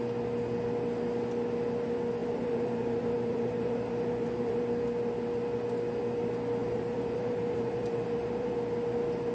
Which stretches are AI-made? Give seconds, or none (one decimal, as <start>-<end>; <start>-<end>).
2.2-4.6; 6.6-8.5